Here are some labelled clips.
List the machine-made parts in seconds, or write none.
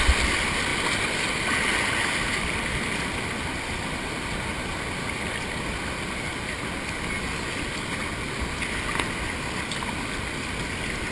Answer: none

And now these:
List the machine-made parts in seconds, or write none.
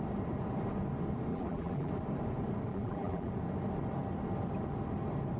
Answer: 1.3-1.9; 2.7-3.3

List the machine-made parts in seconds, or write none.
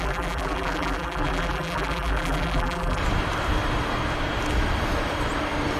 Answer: 0.0-3.0